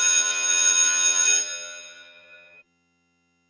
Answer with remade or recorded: remade